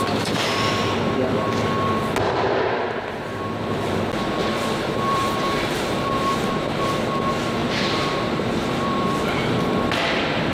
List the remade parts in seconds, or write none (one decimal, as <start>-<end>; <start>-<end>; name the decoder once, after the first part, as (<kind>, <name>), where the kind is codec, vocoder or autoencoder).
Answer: 4.4-6.9 (vocoder, BigVGAN v2); 7.6-9.2